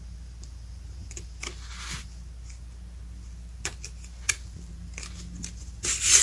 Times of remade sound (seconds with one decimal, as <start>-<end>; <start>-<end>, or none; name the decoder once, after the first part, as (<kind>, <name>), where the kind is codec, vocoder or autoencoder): none